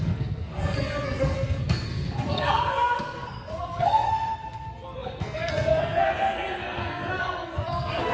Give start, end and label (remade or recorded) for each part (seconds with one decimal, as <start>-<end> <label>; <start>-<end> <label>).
0.0-8.1 remade